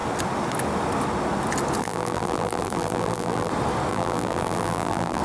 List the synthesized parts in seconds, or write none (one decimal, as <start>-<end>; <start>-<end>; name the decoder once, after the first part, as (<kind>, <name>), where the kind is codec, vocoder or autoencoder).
1.8-3.5 (vocoder, BigVGAN v2); 3.9-5.2